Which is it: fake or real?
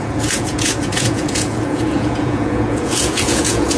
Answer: fake